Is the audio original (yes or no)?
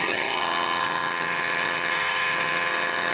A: no